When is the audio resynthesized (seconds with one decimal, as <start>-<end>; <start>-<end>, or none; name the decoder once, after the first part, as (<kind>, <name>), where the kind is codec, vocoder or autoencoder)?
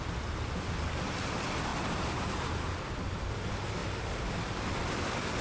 1.7-2.8 (vocoder, BigVGAN v2)